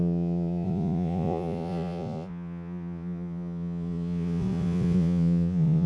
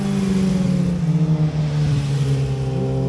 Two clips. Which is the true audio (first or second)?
second